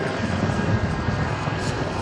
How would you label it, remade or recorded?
remade